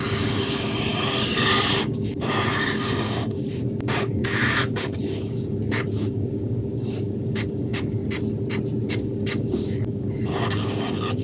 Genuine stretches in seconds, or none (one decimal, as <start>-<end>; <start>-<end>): 8.0-8.9